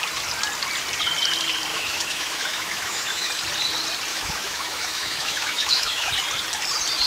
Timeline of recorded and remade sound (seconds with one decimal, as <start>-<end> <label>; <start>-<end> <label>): 0.0-1.7 recorded; 1.7-3.3 remade; 3.3-4.1 recorded; 4.1-6.1 remade; 6.1-7.1 recorded